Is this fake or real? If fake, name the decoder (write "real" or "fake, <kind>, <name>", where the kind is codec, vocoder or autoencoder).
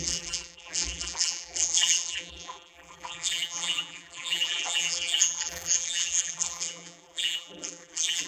fake, vocoder, BigVGAN v2